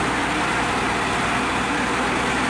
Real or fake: real